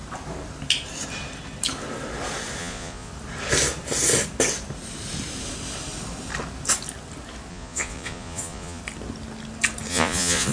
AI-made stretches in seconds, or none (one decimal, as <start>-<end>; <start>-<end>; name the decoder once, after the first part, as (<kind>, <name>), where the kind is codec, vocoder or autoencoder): 2.6-3.1 (vocoder, Vocos); 7.5-8.8; 9.9-10.5